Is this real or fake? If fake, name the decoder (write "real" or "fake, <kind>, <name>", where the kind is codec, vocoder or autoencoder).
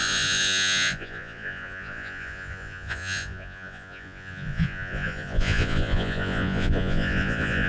fake, vocoder, Vocos